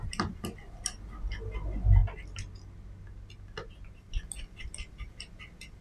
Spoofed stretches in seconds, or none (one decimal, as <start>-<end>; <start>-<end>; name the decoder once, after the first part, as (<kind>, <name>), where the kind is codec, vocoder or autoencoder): none